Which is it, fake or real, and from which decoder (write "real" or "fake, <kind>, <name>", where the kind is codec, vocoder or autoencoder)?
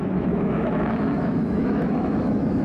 fake, autoencoder, DAC-VAE